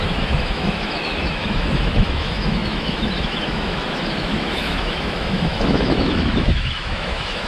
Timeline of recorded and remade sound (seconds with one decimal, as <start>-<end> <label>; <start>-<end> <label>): 0.0-7.5 remade